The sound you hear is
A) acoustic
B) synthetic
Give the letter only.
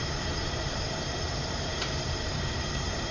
B